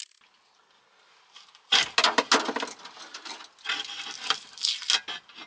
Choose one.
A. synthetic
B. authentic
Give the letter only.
B